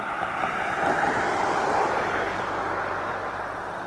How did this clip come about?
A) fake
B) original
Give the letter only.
B